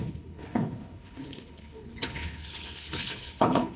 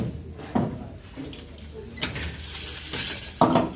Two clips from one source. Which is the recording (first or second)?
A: second